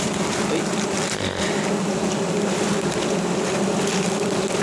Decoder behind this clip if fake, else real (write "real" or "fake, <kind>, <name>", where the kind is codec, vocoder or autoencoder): real